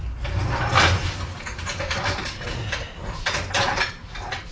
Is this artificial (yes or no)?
no